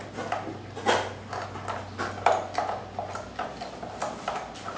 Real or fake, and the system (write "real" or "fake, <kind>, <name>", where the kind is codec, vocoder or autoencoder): real